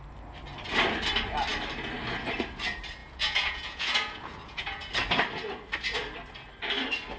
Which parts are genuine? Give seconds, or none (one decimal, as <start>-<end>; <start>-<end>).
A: 0.0-3.0; 4.9-7.2

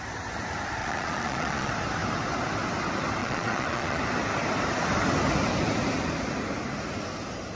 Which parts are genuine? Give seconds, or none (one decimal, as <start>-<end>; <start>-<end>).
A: 0.0-0.8; 1.7-3.2; 4.0-7.6

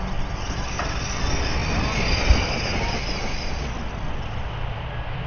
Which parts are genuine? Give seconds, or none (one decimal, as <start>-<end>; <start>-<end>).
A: 0.0-5.3

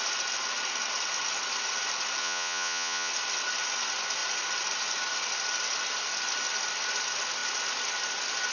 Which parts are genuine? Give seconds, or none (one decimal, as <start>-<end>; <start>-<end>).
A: 0.0-2.2; 3.1-8.5

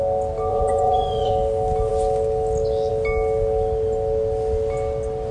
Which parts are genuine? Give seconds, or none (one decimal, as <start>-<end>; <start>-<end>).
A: 0.0-0.5; 1.3-5.3

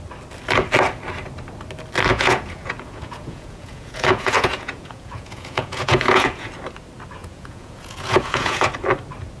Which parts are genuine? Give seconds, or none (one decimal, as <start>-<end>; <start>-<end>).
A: 0.0-2.1; 6.5-7.2; 8.7-9.4

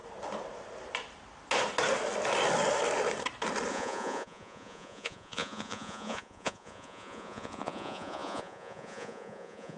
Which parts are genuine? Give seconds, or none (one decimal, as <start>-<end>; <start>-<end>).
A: 0.0-3.7